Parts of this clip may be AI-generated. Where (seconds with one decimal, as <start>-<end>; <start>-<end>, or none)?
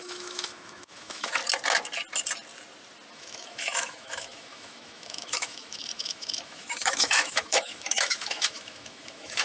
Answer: 0.0-1.4; 3.1-9.4